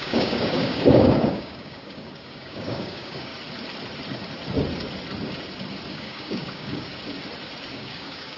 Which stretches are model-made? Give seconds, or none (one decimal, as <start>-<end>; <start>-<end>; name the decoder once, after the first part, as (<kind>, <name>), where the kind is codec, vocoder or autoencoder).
0.0-3.3 (codec, DAC); 5.9-6.9; 7.7-8.4

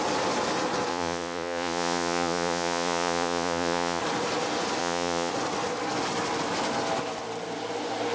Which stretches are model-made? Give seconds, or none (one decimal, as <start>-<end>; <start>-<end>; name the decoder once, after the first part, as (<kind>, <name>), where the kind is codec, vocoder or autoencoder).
0.9-4.0 (vocoder, Vocos); 4.8-5.3

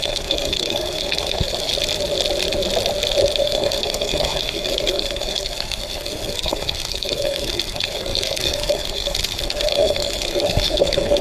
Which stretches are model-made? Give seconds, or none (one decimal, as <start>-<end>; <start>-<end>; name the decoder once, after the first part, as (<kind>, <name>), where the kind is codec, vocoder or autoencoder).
0.0-1.7 (codec, SNAC); 3.4-11.2